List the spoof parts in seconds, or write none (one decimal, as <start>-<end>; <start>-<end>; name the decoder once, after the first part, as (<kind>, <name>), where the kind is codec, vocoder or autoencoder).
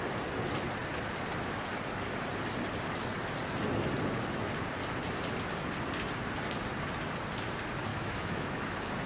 7.9-8.5 (autoencoder, DAC-VAE)